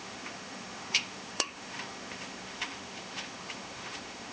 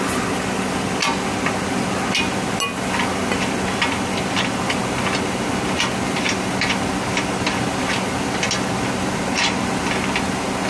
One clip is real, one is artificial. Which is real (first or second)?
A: second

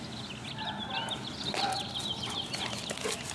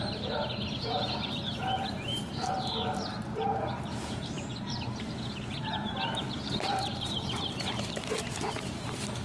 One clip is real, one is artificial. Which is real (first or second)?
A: first